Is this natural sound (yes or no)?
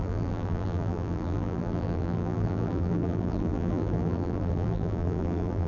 no